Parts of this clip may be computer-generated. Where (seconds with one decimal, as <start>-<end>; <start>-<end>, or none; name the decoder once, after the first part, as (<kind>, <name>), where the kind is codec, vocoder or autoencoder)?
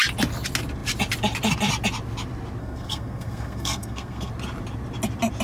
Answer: 2.6-4.3 (codec, SNAC)